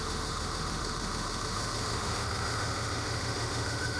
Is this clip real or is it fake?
fake